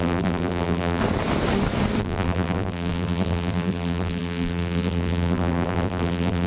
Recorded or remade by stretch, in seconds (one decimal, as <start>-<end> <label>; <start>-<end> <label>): 0.0-1.0 remade; 1.0-2.0 recorded; 2.0-6.5 remade